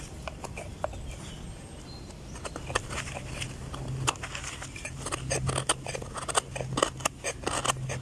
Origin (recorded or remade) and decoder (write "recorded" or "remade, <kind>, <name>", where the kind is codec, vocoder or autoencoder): recorded